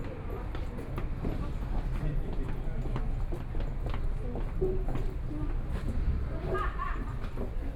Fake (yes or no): no